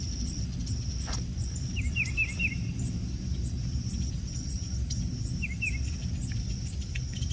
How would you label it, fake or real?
real